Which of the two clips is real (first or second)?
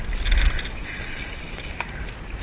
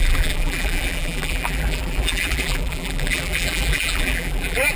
first